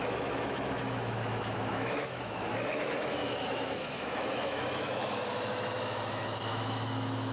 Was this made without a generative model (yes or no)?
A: no